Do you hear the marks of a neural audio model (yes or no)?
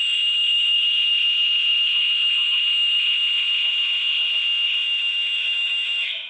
yes